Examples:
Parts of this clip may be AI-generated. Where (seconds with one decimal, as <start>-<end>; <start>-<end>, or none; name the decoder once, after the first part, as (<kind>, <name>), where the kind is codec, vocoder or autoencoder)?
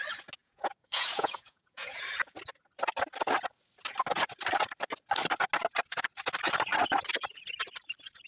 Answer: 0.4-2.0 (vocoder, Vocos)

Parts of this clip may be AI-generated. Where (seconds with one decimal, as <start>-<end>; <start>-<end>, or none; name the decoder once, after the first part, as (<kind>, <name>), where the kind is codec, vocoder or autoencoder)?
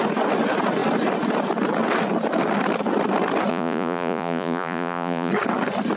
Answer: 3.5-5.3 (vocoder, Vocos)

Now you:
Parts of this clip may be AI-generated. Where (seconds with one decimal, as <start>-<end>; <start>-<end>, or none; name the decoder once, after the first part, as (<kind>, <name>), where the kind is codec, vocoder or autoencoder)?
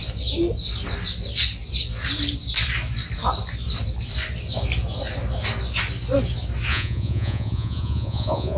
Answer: 6.7-8.6 (vocoder, Vocos)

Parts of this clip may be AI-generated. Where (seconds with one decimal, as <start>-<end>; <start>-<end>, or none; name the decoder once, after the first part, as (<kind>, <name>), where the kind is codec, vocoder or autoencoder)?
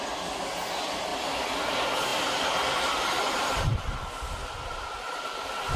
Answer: 1.1-1.7 (vocoder, BigVGAN v2); 2.1-5.8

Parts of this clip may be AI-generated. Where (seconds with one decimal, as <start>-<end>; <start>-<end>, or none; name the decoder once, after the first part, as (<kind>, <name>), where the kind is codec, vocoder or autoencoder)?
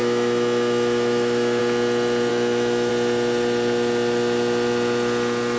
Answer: 0.0-1.6 (autoencoder, DAC-VAE); 2.3-2.9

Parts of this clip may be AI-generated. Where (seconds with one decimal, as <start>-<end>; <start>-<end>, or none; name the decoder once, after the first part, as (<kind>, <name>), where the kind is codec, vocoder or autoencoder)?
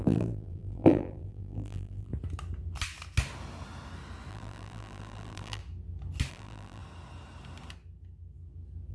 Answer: 0.0-2.1 (vocoder, BigVGAN v2); 4.3-5.6; 6.3-6.8